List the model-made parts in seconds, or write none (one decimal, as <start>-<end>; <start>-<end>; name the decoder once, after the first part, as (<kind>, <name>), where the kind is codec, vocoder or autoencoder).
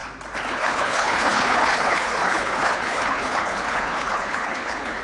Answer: 0.5-5.0 (codec, HILCodec)